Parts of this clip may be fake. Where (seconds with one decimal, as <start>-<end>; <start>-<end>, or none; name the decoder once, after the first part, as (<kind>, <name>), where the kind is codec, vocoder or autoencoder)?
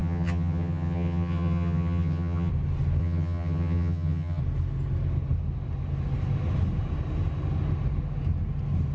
0.0-2.5 (vocoder, HiFi-GAN); 3.0-4.4